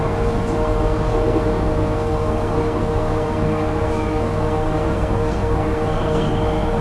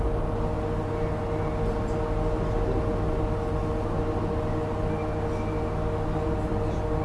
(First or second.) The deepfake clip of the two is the first